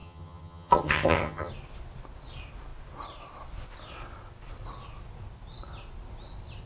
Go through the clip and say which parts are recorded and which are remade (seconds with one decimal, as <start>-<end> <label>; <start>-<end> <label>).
0.0-1.5 remade; 1.5-6.7 recorded